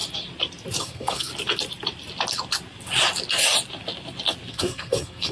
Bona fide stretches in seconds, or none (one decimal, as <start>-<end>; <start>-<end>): 0.0-0.8; 1.3-4.5